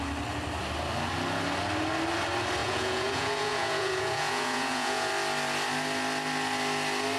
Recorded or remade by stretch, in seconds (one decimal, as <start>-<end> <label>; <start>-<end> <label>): 0.0-2.6 recorded; 2.6-5.1 remade; 5.1-7.2 recorded